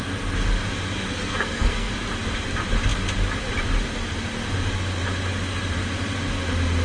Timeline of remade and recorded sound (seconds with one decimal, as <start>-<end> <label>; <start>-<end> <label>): 0.0-1.1 recorded; 1.1-1.9 remade; 1.9-6.8 recorded